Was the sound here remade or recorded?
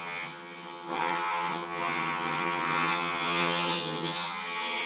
remade